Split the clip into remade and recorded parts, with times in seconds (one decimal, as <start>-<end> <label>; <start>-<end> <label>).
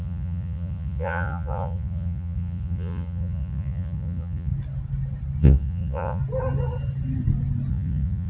0.0-4.5 remade; 4.5-5.4 recorded; 5.4-6.2 remade; 6.2-7.7 recorded; 7.7-8.3 remade